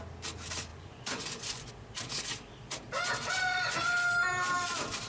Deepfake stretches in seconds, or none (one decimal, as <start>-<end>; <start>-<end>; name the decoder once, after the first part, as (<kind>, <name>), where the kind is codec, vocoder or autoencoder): 0.7-1.7 (vocoder, Vocos)